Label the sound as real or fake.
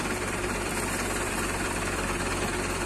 fake